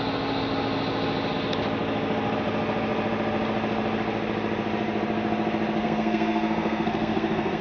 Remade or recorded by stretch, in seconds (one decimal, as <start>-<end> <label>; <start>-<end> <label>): 0.0-5.8 recorded; 5.8-7.6 remade